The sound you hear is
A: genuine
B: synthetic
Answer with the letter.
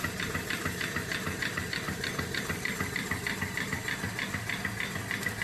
A